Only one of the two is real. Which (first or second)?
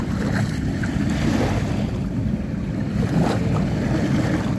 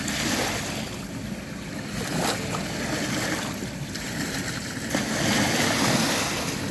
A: second